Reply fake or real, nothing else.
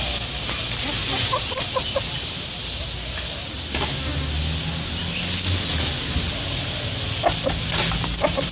real